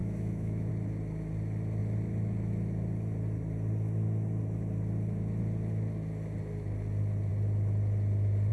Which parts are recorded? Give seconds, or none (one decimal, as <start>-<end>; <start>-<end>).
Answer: 0.7-8.5